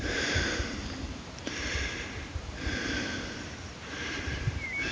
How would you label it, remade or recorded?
remade